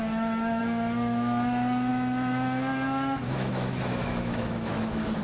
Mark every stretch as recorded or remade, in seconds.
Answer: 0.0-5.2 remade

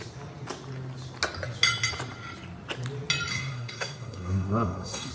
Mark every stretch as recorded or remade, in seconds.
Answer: 0.0-3.3 recorded; 3.3-5.1 remade

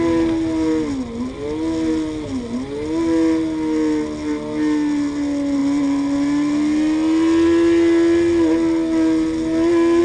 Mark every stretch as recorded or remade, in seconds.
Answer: 0.0-10.0 recorded

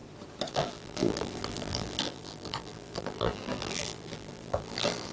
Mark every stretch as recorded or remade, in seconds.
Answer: 0.0-0.5 recorded; 0.5-5.1 remade

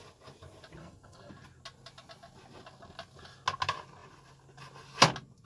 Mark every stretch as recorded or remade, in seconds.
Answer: 0.0-0.8 recorded; 0.8-1.3 remade; 1.3-5.4 recorded